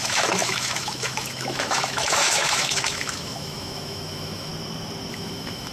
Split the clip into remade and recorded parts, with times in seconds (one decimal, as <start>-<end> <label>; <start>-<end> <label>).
0.0-4.5 remade; 4.5-5.1 recorded; 5.1-5.7 remade